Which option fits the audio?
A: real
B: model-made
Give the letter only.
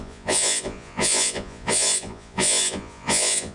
B